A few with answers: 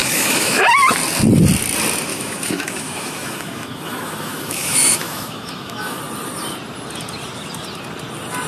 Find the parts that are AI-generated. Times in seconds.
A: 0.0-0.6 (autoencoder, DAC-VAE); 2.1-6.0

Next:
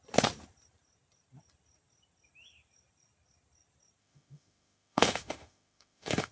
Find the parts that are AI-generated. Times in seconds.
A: 4.0-6.3 (autoencoder, DAC-VAE)

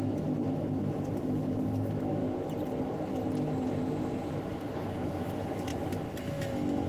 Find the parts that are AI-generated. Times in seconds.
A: 0.0-2.2 (autoencoder, DAC-VAE); 4.7-5.7; 6.2-6.9

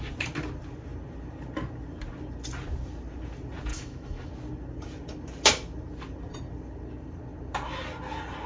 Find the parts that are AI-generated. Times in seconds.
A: 3.7-4.3 (autoencoder, DAC-VAE)

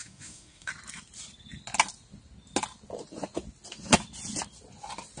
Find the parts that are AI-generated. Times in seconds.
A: 0.0-0.7 (autoencoder, DAC-VAE)

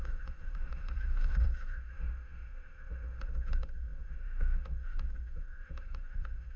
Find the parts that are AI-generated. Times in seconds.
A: 0.0-6.6 (autoencoder, DAC-VAE)

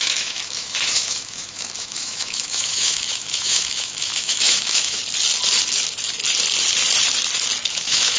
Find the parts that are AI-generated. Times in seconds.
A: 0.0-5.0 (autoencoder, DAC-VAE); 7.7-8.2